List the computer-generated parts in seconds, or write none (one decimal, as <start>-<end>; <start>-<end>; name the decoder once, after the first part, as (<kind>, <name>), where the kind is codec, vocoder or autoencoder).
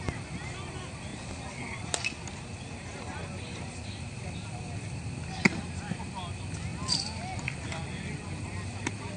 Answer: none